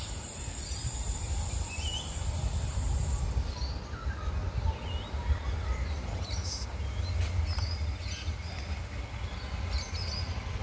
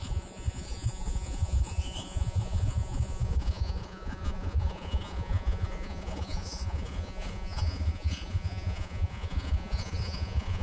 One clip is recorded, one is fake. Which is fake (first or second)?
second